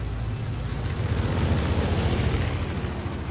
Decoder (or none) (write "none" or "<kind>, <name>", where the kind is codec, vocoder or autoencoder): none